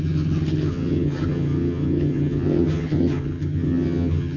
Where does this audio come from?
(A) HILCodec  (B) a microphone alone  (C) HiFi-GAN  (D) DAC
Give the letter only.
C